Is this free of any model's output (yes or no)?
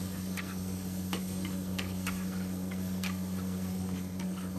no